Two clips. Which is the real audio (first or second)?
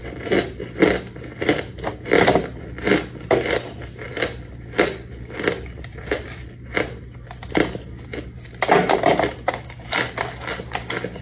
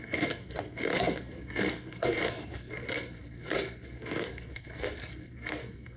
first